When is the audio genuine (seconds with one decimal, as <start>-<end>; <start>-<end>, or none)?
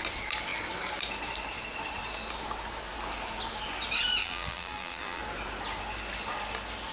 0.0-4.2; 5.2-6.9